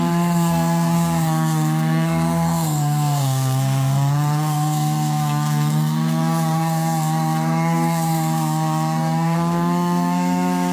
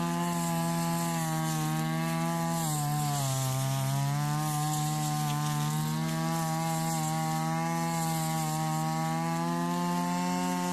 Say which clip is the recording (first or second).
second